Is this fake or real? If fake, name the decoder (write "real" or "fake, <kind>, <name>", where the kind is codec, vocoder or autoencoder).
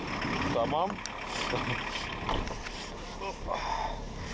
real